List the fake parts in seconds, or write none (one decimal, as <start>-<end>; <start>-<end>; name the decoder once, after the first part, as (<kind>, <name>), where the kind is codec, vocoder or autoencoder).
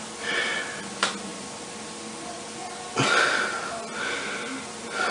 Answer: none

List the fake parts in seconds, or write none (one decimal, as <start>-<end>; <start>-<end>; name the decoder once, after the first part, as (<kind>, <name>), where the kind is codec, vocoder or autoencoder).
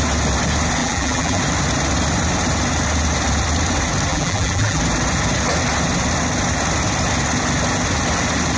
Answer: 0.8-1.4 (vocoder, BigVGAN v2); 4.1-4.8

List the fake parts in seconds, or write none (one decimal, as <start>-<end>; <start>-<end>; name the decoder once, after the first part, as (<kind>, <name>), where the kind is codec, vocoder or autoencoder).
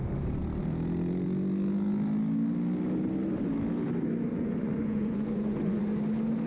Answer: 4.3-5.8 (vocoder, Vocos)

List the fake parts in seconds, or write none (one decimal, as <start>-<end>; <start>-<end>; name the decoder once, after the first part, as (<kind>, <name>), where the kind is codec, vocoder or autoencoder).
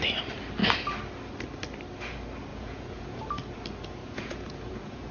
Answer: 2.5-3.2 (vocoder, Vocos); 4.0-5.1